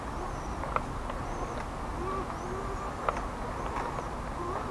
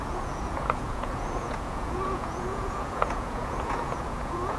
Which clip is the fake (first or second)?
second